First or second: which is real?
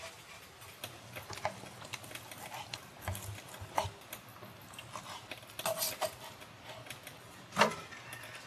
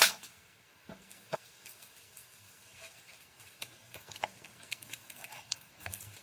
first